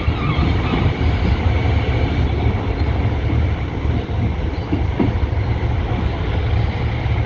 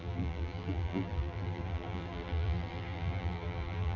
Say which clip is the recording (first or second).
first